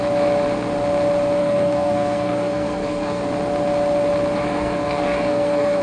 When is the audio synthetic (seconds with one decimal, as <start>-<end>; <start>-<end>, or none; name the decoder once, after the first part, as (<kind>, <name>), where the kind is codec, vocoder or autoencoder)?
1.4-3.2 (codec, SNAC); 4.4-5.8